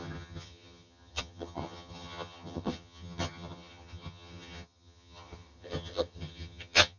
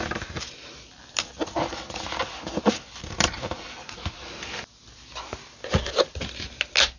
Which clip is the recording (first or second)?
second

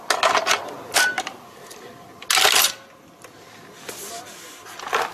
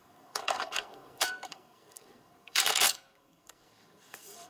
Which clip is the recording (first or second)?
first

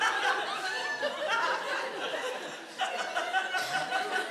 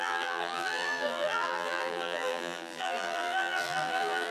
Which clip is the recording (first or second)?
first